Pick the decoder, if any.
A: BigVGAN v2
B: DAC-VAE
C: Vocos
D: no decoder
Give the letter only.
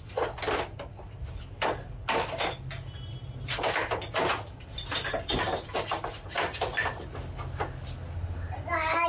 D